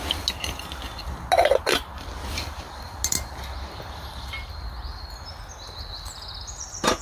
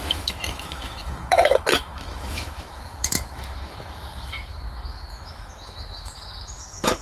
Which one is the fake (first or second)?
second